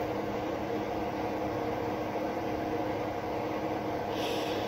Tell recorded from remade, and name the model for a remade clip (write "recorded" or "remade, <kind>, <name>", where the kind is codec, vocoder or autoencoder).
recorded